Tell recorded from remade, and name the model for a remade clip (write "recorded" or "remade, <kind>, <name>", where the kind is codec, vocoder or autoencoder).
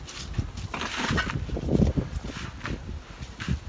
recorded